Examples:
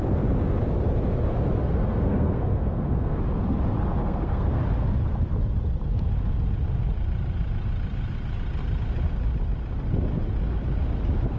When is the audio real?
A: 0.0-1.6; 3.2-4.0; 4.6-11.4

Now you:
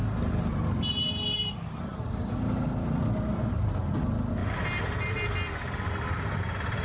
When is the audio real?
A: 0.0-1.9; 2.7-6.8

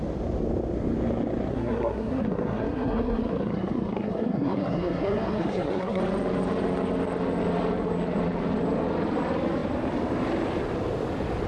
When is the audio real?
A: 0.0-1.5; 6.0-11.5

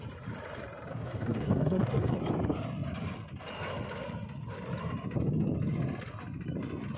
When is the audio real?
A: 0.0-0.9; 2.2-7.0

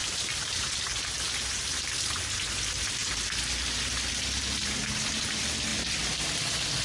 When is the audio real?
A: 0.7-5.7

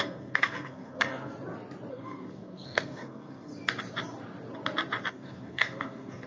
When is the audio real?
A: 1.3-1.9; 3.5-5.1

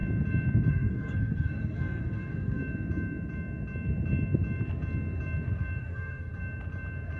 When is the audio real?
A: 0.0-0.7; 2.6-5.8; 6.3-7.2

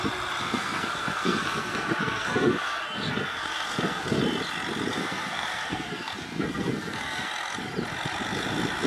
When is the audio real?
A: 0.0-0.4; 4.2-4.9; 7.3-8.9